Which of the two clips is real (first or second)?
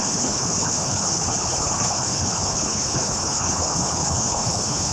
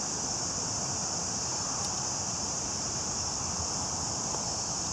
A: second